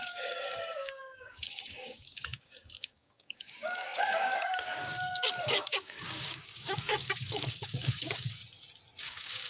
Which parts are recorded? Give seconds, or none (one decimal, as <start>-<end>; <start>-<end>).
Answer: 8.4-9.0